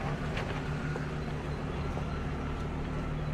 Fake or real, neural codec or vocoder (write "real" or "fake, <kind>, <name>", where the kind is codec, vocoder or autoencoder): real